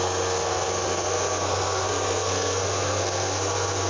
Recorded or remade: remade